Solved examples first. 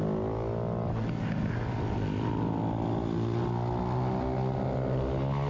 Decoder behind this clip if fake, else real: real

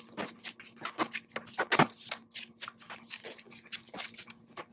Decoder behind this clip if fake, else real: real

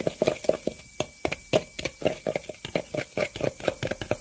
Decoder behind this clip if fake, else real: real